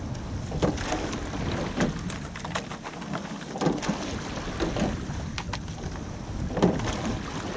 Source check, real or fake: real